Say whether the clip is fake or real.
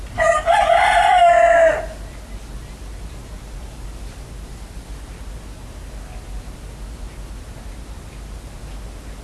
real